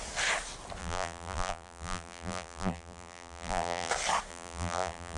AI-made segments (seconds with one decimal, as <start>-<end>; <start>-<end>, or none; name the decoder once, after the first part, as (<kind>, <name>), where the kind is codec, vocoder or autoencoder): 0.8-3.9 (vocoder, BigVGAN v2); 4.3-5.2